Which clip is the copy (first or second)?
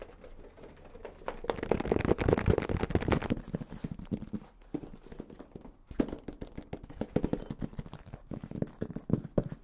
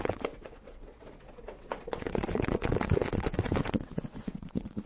second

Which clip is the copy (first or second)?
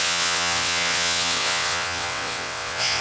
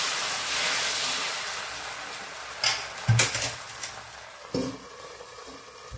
first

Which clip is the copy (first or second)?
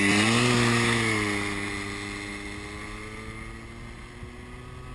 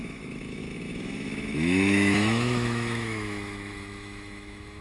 second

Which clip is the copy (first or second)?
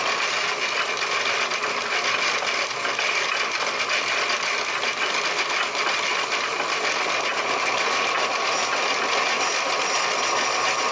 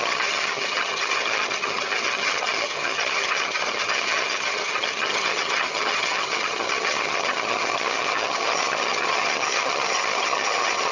second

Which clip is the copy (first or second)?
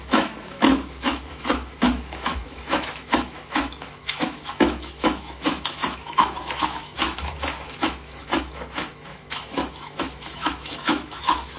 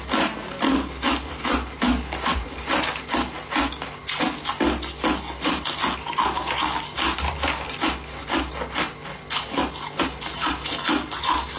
first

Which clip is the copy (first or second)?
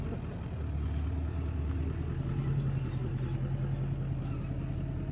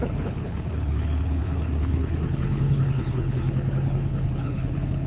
second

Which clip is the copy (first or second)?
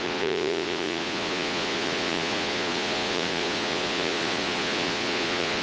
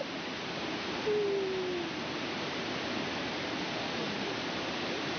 first